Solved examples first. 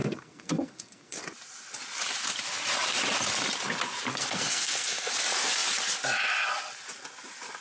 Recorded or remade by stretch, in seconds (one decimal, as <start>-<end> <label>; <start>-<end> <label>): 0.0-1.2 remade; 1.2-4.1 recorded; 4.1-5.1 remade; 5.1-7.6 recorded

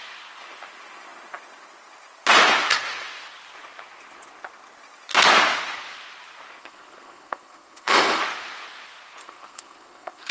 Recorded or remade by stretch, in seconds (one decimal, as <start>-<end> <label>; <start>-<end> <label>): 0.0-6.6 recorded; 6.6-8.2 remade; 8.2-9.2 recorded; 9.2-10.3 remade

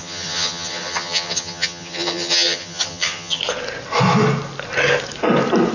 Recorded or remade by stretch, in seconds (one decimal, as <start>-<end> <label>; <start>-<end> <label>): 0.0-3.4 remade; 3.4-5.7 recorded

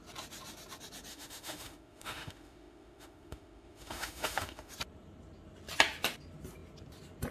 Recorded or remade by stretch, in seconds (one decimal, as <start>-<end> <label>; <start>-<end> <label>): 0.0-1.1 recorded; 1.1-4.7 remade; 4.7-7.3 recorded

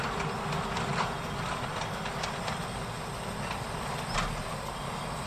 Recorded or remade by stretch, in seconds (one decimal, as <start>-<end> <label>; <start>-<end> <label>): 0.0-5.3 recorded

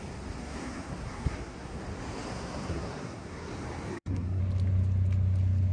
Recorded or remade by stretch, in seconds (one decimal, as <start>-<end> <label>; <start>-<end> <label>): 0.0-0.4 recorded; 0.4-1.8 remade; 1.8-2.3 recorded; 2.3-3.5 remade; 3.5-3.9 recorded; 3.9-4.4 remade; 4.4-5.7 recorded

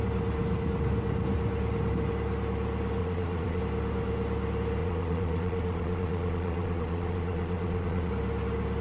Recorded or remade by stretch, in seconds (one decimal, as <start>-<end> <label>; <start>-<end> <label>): 0.0-3.0 recorded; 3.0-3.6 remade; 3.6-4.8 recorded; 4.8-8.1 remade; 8.1-8.8 recorded